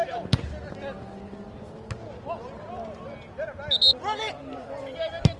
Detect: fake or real real